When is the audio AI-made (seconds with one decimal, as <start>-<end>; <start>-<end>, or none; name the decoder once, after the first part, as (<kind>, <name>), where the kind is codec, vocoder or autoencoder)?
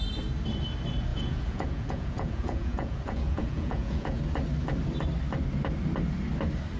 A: 1.1-4.2 (vocoder, Vocos)